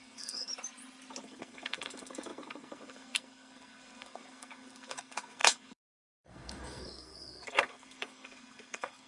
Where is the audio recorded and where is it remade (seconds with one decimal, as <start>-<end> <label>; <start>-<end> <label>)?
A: 0.0-0.5 remade; 0.5-1.2 recorded; 1.2-9.1 remade